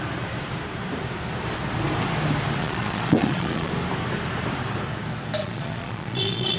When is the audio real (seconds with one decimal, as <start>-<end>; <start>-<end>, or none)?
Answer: 0.0-2.6; 3.7-5.4